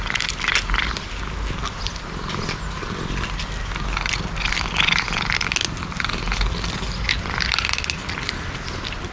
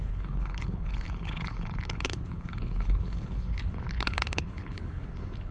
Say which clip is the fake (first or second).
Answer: second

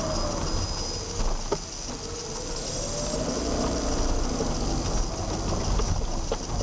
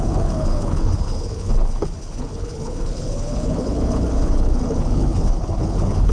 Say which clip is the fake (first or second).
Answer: second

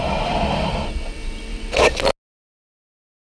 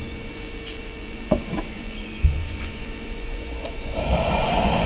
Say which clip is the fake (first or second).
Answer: second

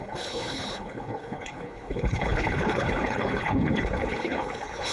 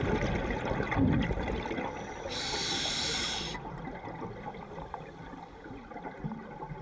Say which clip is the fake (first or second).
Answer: first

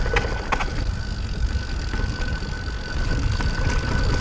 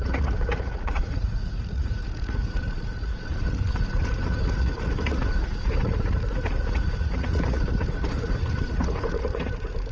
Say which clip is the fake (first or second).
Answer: second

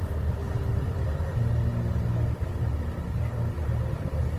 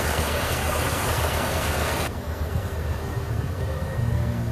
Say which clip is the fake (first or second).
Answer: second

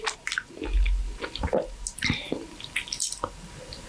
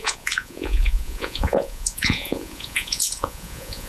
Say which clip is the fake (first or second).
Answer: second